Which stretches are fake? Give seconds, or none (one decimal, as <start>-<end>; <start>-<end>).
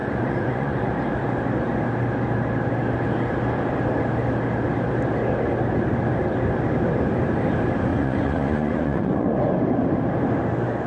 0.0-0.9; 7.9-9.4